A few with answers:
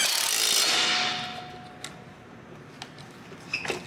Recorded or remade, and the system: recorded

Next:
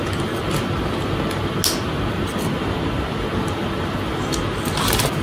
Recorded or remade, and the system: recorded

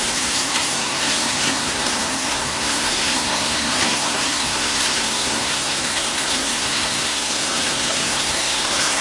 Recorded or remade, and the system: remade, codec, SNAC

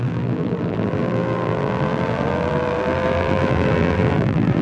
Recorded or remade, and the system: remade, vocoder, BigVGAN v2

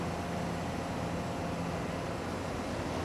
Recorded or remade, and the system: recorded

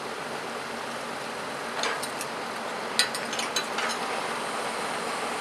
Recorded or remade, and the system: recorded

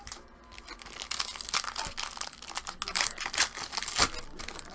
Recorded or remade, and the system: recorded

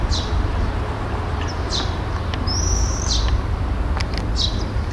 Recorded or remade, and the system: recorded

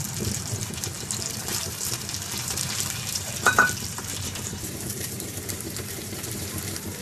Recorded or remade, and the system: remade, vocoder, BigVGAN v2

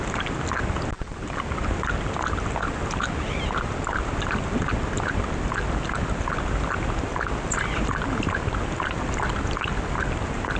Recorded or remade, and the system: recorded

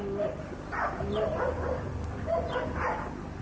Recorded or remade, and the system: recorded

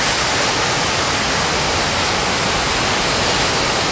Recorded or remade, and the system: recorded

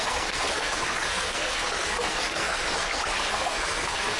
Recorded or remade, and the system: remade, codec, SNAC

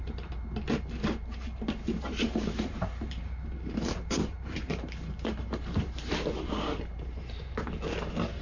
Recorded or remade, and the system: remade, vocoder, BigVGAN v2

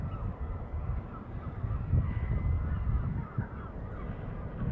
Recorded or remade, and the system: recorded